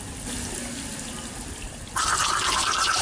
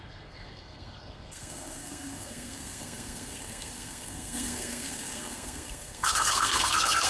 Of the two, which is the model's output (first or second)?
second